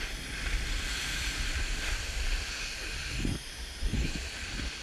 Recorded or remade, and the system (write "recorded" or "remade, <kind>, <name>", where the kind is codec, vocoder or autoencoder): remade, vocoder, BigVGAN v2